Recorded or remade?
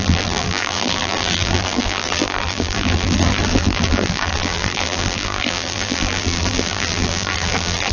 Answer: remade